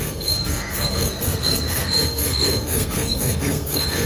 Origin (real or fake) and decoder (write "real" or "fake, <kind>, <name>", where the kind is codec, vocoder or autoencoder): fake, codec, SNAC